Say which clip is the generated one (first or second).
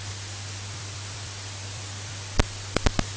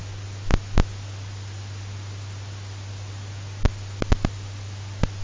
first